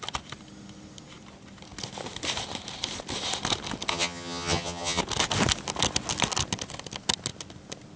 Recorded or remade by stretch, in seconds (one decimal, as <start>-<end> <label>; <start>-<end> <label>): 0.0-3.9 recorded; 3.9-5.0 remade; 5.0-8.0 recorded